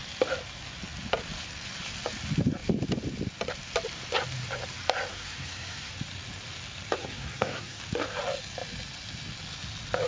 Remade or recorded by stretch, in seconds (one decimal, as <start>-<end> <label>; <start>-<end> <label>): 0.0-5.1 recorded; 5.1-5.9 remade; 5.9-7.0 recorded; 7.0-7.8 remade; 7.8-10.1 recorded